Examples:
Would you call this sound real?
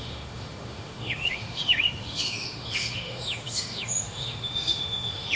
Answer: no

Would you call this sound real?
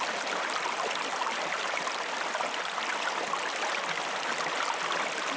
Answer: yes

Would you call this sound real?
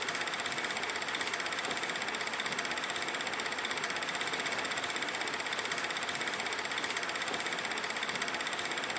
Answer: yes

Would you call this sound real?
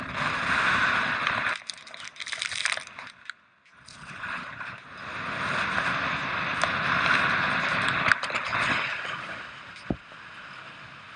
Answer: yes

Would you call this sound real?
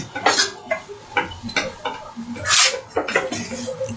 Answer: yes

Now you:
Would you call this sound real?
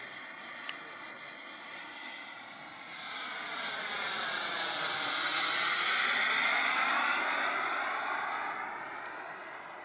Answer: yes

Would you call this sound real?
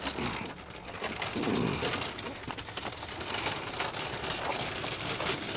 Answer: yes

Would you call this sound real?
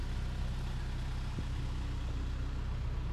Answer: yes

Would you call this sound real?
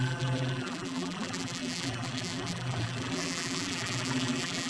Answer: no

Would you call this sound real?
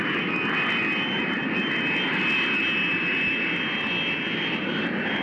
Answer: yes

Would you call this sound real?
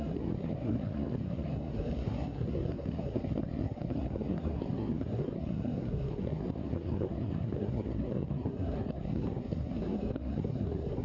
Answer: no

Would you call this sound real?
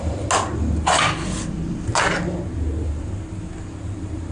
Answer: yes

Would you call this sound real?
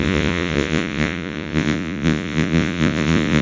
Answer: no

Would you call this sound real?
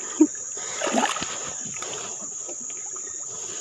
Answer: yes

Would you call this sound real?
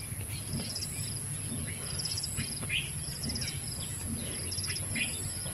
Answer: yes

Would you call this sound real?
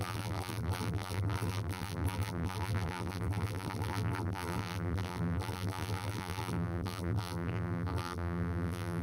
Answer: no